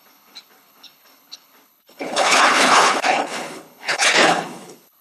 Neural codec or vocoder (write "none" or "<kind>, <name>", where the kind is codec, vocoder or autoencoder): codec, HILCodec